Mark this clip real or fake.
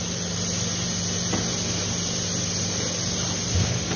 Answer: real